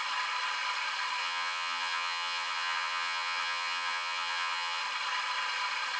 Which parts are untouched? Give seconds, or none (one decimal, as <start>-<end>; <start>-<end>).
0.0-1.2; 4.8-6.0